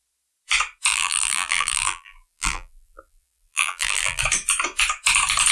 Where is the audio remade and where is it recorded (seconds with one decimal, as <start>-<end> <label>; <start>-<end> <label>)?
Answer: 0.0-0.9 recorded; 0.9-4.2 remade; 4.2-5.5 recorded